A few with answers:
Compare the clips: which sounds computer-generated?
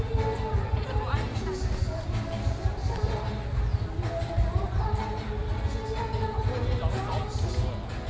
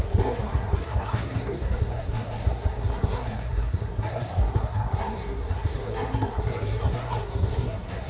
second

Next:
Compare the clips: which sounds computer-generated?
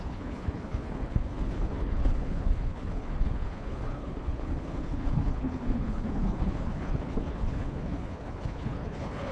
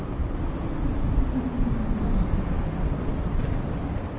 first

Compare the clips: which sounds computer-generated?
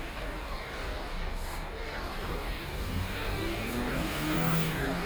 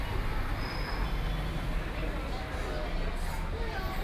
first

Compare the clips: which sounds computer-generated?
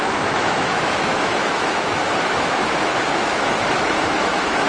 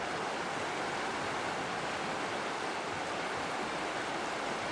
first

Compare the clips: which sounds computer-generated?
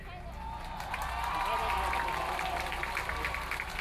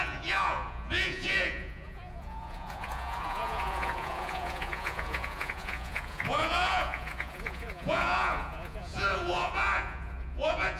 second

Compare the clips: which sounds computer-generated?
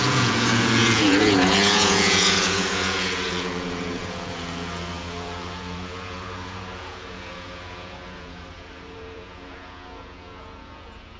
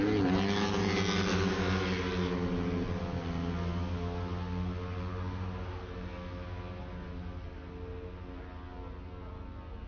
first